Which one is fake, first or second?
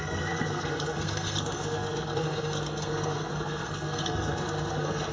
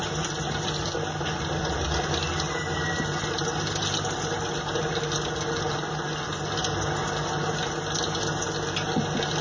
first